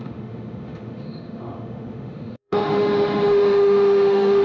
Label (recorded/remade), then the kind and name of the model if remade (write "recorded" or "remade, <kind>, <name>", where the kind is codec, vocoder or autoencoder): remade, autoencoder, DAC-VAE